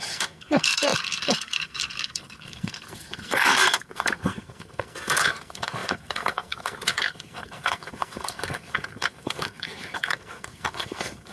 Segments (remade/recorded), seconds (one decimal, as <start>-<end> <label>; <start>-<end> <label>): 0.0-11.3 remade